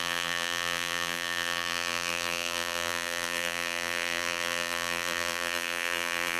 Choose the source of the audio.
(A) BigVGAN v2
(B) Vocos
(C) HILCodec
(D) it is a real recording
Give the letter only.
A